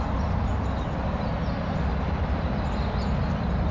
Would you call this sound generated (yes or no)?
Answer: no